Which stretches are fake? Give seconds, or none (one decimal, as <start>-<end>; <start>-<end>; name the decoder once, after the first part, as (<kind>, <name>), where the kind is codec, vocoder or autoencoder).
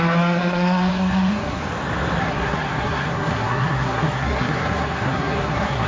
0.0-1.6 (codec, SNAC); 2.2-5.9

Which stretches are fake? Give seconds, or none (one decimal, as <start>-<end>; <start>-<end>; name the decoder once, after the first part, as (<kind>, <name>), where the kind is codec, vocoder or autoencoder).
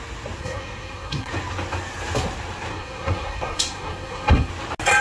0.4-1.3 (codec, SNAC); 2.7-4.5